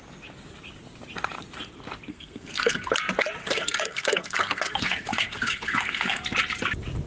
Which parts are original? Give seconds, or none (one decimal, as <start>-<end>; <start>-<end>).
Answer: 0.0-2.1; 2.9-3.4; 6.2-7.1